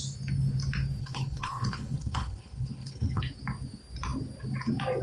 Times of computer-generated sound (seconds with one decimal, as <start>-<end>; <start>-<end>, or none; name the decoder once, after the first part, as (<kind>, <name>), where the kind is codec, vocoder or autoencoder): 1.0-3.2 (codec, HILCodec)